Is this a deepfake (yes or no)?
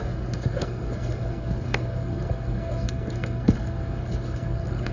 yes